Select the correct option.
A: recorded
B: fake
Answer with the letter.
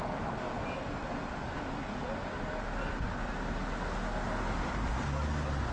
A